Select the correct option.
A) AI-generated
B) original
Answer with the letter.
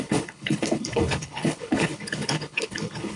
A